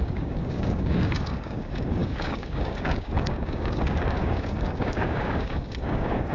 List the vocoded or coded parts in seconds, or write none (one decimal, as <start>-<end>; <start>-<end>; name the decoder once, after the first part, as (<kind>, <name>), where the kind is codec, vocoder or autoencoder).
0.0-6.3 (codec, DAC)